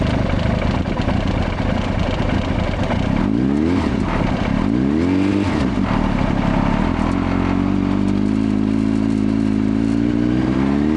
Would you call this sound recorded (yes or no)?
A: yes